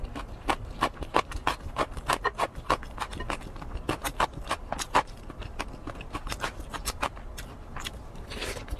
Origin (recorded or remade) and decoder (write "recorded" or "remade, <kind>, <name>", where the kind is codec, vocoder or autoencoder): recorded